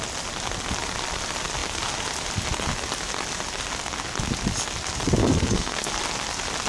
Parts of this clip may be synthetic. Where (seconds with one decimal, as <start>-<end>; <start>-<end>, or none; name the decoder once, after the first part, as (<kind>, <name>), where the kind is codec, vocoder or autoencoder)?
5.2-5.9 (codec, SNAC)